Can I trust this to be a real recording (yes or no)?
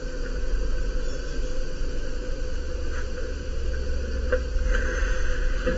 yes